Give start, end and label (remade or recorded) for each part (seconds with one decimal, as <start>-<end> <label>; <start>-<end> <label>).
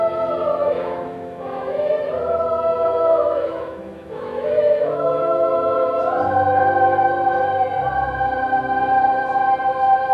0.0-0.6 recorded; 0.6-1.9 remade; 1.9-2.7 recorded; 2.7-6.0 remade; 6.0-10.1 recorded